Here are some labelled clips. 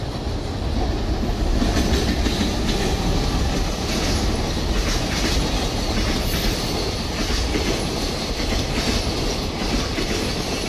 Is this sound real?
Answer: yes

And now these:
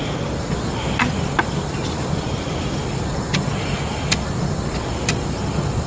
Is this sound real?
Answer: yes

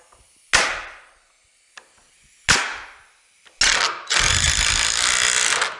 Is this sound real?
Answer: yes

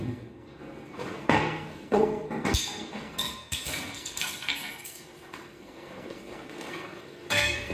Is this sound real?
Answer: no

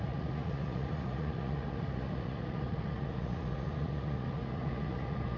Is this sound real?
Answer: no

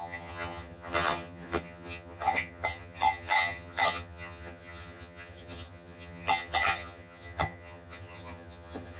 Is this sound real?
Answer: no